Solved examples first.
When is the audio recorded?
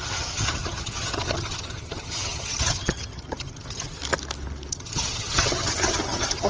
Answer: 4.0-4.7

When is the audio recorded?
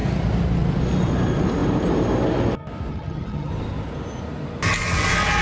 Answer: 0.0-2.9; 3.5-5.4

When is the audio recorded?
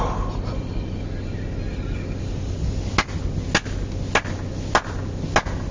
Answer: 0.0-5.7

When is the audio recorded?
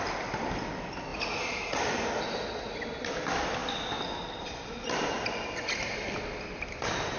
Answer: 0.0-7.2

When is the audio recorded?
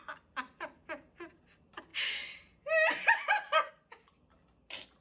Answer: 0.0-5.0